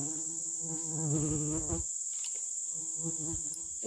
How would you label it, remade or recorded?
recorded